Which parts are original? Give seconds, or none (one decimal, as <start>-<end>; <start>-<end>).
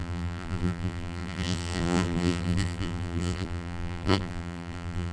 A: none